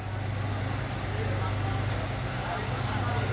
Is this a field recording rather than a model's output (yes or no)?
yes